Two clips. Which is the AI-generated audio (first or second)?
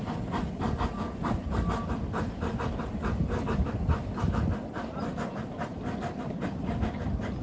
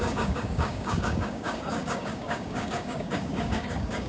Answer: second